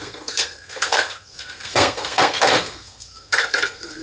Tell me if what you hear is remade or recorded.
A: remade